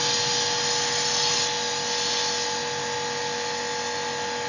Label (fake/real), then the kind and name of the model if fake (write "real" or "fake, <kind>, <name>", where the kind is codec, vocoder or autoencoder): real